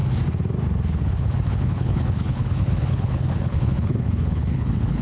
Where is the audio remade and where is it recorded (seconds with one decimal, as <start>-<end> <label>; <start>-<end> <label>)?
0.0-1.0 recorded; 1.0-5.0 remade